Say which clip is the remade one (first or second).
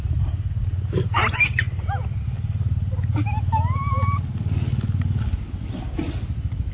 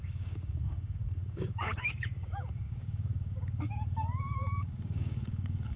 second